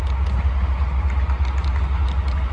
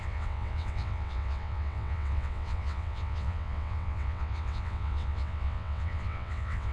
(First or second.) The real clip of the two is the first